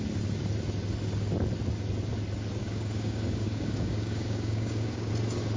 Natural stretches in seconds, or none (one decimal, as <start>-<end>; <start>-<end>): 0.0-2.6; 5.1-5.6